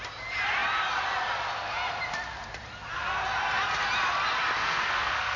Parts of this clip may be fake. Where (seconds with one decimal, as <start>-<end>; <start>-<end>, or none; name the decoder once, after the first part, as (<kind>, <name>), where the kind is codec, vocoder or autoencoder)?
4.6-5.4 (codec, SNAC)